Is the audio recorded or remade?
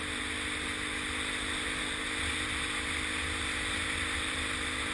recorded